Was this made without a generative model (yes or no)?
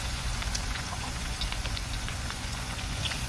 no